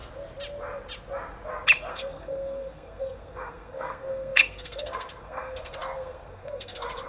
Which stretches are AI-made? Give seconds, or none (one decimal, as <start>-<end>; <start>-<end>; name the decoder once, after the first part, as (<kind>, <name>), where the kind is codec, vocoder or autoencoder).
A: 1.9-7.1 (codec, SNAC)